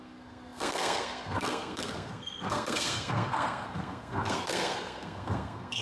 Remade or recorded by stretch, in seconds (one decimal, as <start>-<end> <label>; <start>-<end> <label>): 0.0-5.8 remade